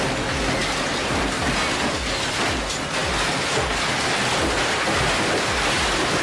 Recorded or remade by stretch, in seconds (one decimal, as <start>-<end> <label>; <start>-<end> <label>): 0.0-6.2 recorded